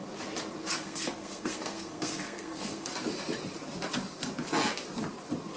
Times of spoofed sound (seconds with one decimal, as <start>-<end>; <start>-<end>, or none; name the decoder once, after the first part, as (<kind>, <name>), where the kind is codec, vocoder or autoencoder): 0.7-2.9 (codec, SNAC)